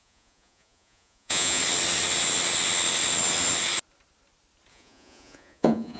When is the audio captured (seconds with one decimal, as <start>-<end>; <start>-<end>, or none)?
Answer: 1.6-4.7